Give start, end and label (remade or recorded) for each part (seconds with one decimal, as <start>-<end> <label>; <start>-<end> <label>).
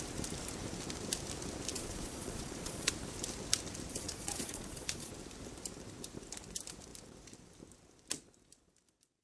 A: 0.0-1.7 recorded; 1.7-2.9 remade; 2.9-3.9 recorded; 3.9-5.1 remade; 5.1-9.2 recorded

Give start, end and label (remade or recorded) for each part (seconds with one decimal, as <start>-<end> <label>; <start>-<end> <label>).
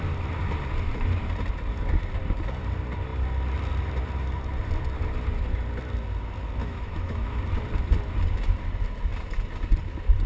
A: 0.0-6.6 recorded; 6.6-7.4 remade; 7.4-10.3 recorded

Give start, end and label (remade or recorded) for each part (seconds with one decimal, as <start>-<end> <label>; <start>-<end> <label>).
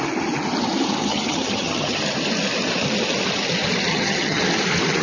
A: 0.0-1.0 recorded; 1.0-2.0 remade; 2.0-3.9 recorded; 3.9-4.4 remade; 4.4-5.0 recorded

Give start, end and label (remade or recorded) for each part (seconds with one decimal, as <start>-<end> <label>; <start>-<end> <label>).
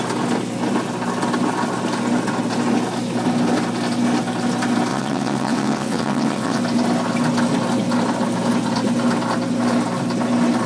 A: 0.0-4.9 recorded; 4.9-6.6 remade; 6.6-10.7 recorded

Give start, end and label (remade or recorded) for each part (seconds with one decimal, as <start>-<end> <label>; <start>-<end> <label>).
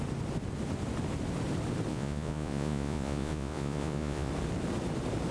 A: 0.0-1.9 recorded; 1.9-4.3 remade; 4.3-5.3 recorded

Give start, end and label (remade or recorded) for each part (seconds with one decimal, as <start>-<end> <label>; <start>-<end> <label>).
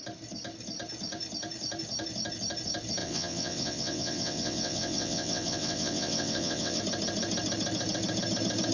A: 0.0-3.0 recorded; 3.0-6.8 remade; 6.8-8.7 recorded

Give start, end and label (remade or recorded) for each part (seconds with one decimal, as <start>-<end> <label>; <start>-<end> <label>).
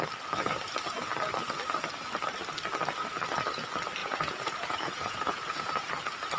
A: 0.0-4.0 recorded; 4.0-5.9 remade; 5.9-6.4 recorded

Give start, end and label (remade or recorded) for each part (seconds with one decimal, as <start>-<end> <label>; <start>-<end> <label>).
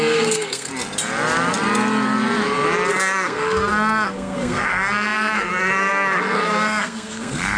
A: 0.0-0.7 remade; 0.7-2.9 recorded; 2.9-7.6 remade